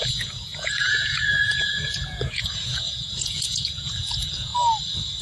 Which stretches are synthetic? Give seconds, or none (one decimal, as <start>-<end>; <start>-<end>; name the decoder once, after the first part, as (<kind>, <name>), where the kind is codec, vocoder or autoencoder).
0.0-4.5 (vocoder, Vocos)